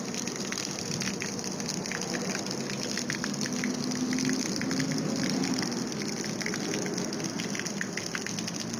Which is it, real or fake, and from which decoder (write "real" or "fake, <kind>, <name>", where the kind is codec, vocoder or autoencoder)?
real